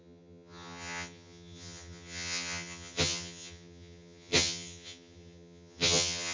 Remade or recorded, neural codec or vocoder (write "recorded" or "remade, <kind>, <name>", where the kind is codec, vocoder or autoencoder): remade, vocoder, HiFi-GAN